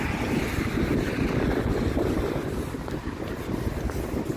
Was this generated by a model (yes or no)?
no